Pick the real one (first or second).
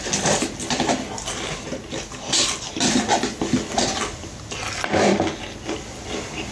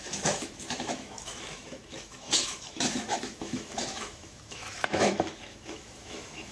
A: first